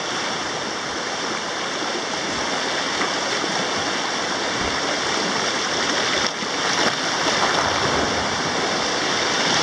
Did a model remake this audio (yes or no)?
no